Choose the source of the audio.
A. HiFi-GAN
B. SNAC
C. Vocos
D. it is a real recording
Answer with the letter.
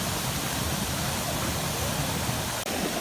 D